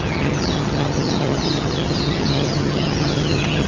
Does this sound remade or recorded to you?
remade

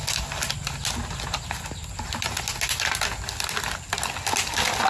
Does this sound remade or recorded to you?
recorded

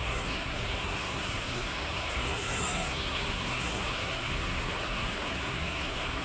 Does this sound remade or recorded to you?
remade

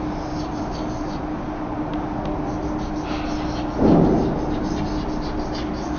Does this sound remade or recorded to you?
recorded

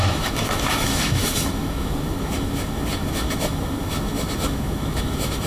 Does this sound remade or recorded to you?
remade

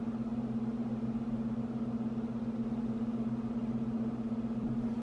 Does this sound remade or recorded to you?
recorded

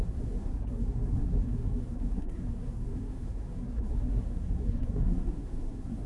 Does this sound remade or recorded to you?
remade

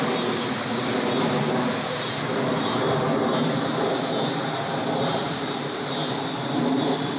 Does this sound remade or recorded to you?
recorded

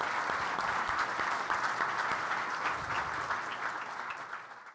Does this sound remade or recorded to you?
recorded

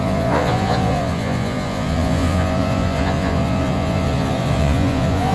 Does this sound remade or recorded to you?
remade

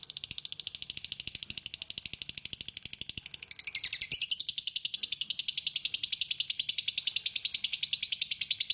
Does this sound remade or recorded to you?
recorded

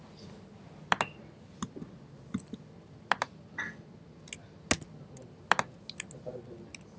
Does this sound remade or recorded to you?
recorded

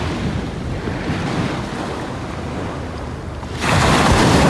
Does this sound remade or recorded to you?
recorded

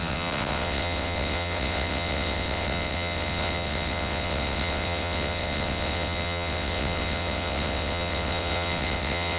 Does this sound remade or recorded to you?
remade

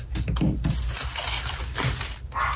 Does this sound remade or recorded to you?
recorded